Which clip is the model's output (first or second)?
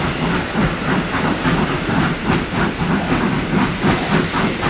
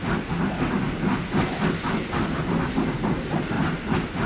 first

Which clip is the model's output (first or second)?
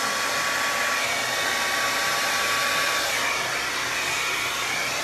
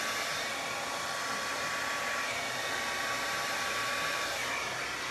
second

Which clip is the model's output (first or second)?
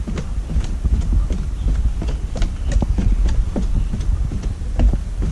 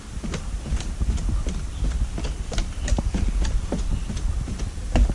second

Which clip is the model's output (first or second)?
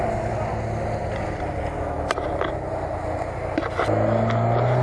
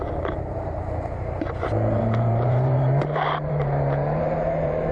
second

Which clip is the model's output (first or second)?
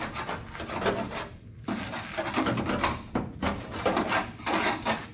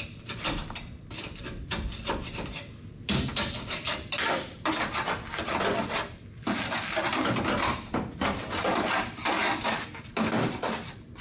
second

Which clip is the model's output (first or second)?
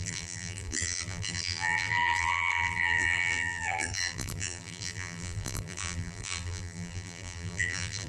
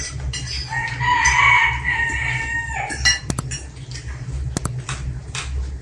first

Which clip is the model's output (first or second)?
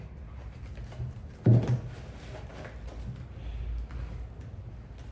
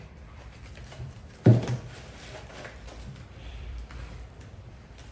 second